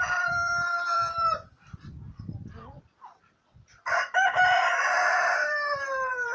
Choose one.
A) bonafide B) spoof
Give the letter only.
B